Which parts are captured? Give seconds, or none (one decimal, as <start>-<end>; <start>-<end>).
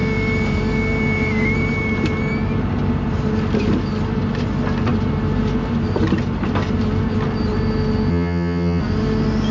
0.0-8.1; 8.8-9.5